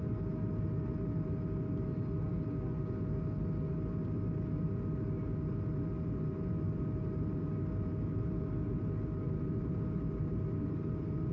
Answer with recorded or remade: recorded